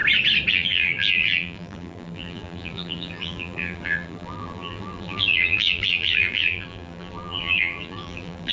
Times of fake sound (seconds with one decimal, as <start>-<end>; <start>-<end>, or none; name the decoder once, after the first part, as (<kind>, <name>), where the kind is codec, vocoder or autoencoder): 0.5-8.5 (vocoder, BigVGAN v2)

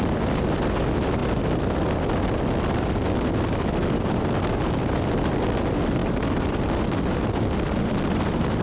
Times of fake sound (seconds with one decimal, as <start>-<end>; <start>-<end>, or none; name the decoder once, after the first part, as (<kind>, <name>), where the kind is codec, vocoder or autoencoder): none

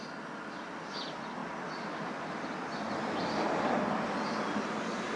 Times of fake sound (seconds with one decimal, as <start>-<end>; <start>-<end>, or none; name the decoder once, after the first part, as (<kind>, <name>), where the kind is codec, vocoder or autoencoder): none

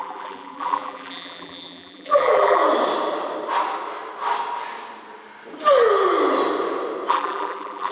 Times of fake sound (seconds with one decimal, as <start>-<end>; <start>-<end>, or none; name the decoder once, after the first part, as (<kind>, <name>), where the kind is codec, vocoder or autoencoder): 0.0-2.6 (vocoder, BigVGAN v2); 7.1-7.9

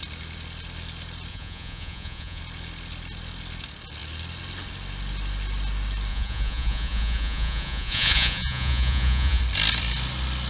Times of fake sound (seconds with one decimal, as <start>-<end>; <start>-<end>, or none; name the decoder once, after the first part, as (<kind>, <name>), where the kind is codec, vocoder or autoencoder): 1.3-2.4 (vocoder, Vocos); 6.1-9.4